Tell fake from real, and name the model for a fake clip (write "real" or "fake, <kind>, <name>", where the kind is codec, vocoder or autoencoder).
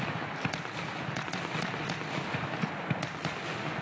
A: real